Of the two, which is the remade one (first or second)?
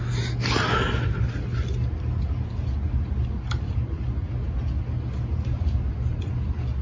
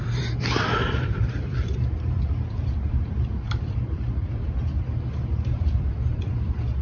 second